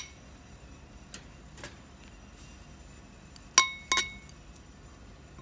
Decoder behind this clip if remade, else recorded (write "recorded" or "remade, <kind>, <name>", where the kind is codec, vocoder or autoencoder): recorded